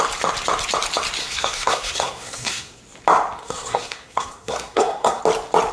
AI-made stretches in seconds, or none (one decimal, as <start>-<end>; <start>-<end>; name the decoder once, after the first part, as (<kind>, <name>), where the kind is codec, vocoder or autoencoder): 1.2-2.8 (codec, SNAC); 3.4-5.2